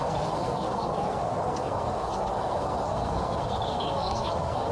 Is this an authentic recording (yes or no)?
no